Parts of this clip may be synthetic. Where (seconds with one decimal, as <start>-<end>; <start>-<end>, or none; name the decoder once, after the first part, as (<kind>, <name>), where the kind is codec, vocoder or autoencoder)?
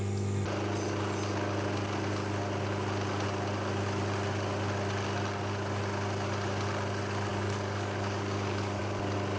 7.3-8.8 (codec, DAC)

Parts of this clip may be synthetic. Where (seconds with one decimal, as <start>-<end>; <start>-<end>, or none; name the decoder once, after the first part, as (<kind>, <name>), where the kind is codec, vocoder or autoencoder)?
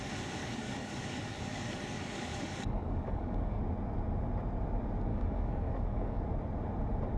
0.4-3.6 (codec, DAC); 5.1-6.2